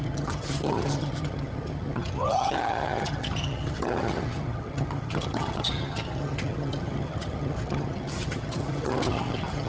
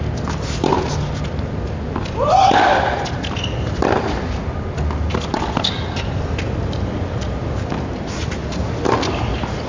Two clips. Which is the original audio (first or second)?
second